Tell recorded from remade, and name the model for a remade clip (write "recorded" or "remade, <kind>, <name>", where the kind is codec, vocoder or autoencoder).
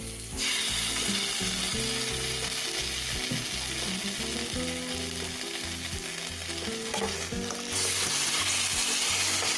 recorded